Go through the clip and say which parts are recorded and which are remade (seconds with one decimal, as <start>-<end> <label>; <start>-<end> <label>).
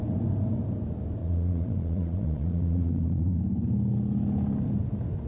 0.0-1.2 recorded; 1.2-3.4 remade; 3.4-5.3 recorded